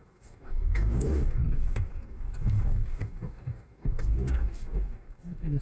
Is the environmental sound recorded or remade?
remade